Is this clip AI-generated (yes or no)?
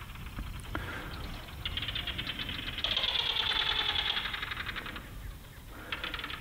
no